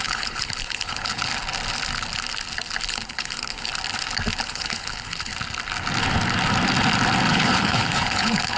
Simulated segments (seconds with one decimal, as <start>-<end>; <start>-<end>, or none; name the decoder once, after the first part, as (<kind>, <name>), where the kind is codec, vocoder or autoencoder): 0.0-1.3 (codec, HILCodec); 2.8-3.7; 4.5-5.3; 7.3-8.6